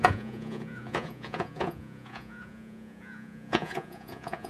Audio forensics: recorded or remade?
remade